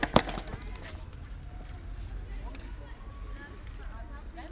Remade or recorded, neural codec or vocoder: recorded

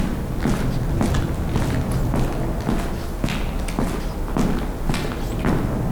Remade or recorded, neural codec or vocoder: recorded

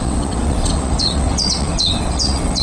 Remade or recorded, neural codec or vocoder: remade, vocoder, WaveNeXt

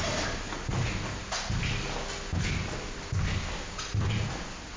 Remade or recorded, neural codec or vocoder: recorded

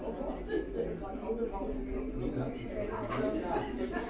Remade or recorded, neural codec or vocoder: recorded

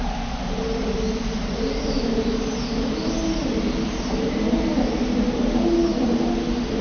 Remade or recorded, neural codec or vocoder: recorded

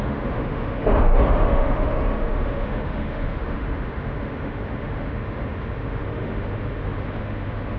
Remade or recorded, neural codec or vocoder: remade, autoencoder, DAC-VAE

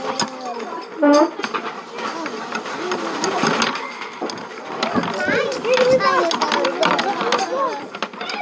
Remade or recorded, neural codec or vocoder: recorded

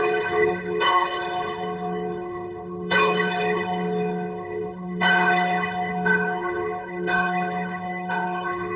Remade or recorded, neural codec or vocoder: remade, codec, HILCodec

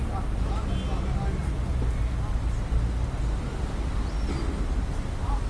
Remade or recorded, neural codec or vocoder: recorded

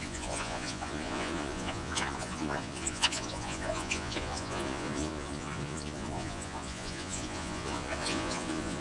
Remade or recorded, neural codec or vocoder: remade, vocoder, Vocos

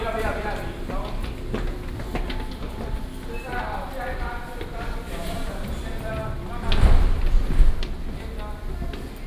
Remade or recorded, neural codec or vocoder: recorded